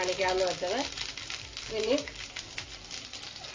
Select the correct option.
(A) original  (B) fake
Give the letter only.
A